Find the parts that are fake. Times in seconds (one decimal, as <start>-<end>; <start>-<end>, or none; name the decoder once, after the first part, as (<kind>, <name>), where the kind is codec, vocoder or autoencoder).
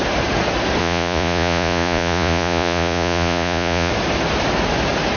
0.8-3.9 (vocoder, Vocos)